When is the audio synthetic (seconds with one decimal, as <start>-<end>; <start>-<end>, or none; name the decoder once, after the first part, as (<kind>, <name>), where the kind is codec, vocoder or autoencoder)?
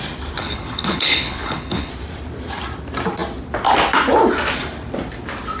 0.4-1.9 (codec, HILCodec)